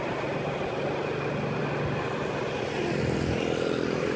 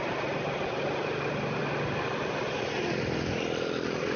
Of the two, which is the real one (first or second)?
first